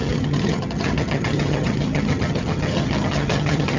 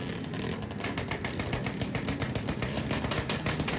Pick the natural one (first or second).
second